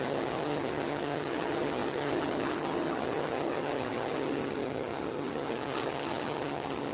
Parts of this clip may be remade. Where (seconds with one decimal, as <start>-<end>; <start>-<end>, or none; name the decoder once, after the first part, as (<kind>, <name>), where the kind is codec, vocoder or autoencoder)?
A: 0.0-6.9 (vocoder, HiFi-GAN)